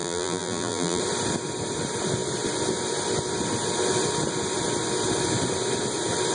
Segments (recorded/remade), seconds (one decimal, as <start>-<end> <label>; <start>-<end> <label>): 0.0-1.0 remade; 1.0-6.3 recorded